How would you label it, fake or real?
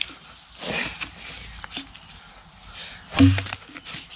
real